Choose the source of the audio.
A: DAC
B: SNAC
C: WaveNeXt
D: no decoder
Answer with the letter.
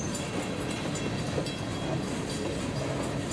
D